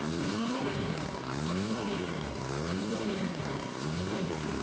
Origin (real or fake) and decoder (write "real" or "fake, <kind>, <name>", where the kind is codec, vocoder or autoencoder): fake, codec, SNAC